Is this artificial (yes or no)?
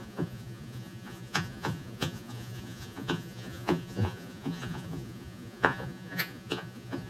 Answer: yes